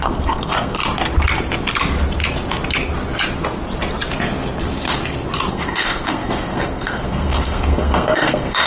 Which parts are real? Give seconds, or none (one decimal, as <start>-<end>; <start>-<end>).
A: 0.8-5.5